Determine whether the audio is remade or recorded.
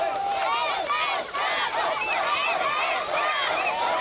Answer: recorded